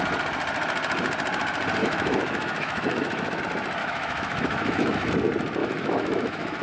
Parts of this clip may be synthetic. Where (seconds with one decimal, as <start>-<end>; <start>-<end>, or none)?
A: 1.8-3.4; 3.8-5.1; 5.6-6.6